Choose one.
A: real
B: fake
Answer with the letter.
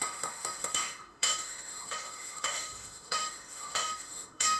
B